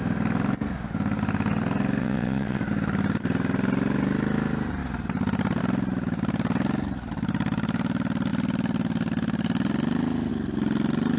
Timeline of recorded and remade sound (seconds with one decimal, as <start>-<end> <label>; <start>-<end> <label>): 0.0-2.0 recorded; 2.0-2.6 remade; 2.6-11.2 recorded